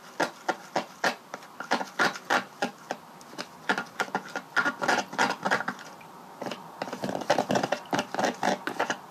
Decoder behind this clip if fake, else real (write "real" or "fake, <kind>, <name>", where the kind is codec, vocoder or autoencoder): real